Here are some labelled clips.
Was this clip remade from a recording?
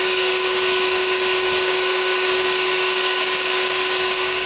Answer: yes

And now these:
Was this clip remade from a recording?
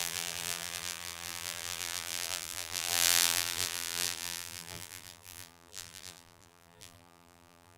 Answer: yes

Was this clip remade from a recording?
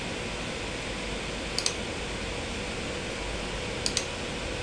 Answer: no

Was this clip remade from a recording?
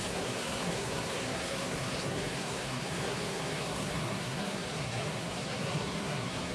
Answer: yes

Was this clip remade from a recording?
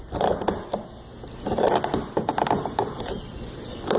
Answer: no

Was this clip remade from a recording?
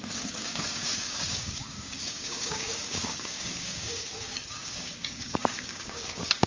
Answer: yes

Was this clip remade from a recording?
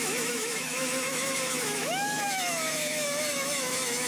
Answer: yes